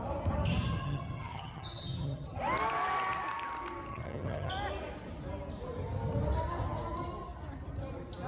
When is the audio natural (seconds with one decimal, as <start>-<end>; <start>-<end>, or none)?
0.0-0.8; 2.4-3.9; 4.5-8.3

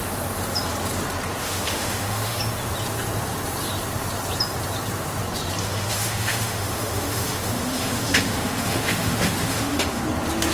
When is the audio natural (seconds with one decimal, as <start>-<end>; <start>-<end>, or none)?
0.0-1.4; 2.4-5.6; 10.0-10.5

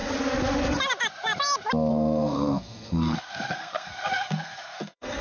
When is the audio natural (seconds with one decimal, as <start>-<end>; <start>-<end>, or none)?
0.0-1.9